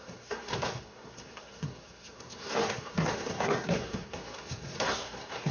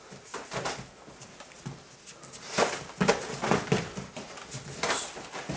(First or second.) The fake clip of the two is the first